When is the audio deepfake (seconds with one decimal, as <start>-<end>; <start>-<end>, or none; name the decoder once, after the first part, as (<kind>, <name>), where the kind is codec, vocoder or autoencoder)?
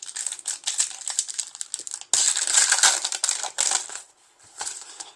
3.9-5.2 (codec, HILCodec)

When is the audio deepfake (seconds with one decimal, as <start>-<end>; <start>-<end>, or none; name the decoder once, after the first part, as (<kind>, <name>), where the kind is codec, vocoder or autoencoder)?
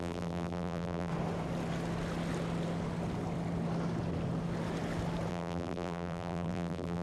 0.0-1.1 (vocoder, BigVGAN v2); 5.3-7.0